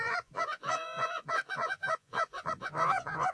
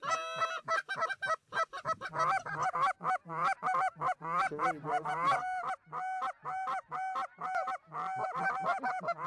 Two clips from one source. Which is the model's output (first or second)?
first